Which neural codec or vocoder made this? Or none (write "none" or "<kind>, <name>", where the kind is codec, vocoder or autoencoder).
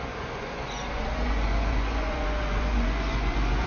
vocoder, Vocos